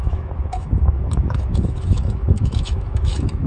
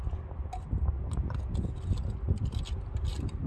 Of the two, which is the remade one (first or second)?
first